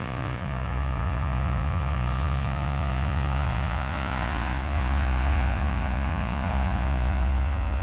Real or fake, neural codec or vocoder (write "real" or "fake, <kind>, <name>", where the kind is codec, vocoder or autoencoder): fake, vocoder, Vocos